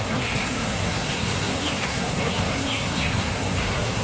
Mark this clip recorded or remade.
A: remade